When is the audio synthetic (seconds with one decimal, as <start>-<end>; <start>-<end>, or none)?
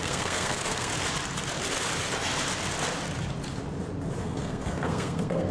0.0-0.9; 4.2-5.5